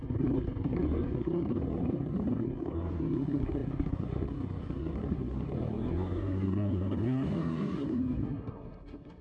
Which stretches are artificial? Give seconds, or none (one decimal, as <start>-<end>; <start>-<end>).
0.0-9.2